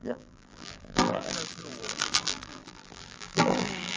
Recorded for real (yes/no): no